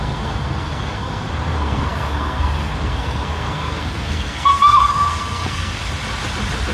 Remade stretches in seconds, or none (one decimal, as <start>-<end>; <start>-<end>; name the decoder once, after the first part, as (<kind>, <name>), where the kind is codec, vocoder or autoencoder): 0.0-5.8 (codec, SNAC)